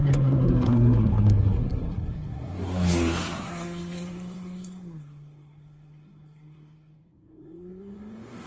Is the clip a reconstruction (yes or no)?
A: yes